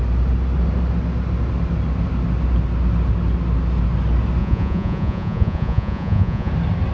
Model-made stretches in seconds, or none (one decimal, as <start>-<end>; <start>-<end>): 4.4-6.5